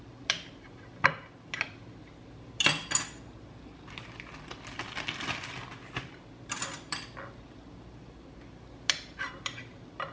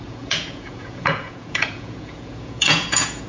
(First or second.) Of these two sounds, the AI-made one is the second